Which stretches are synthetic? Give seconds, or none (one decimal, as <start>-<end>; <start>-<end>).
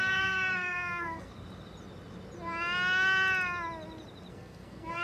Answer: 0.0-1.3; 4.3-5.0